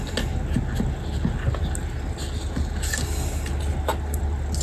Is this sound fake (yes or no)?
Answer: no